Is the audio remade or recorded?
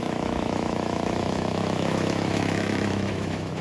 remade